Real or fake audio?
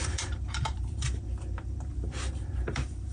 fake